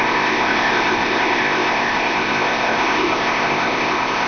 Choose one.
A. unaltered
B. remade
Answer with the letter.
B